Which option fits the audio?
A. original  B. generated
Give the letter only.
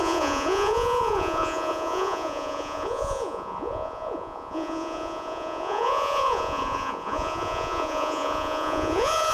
B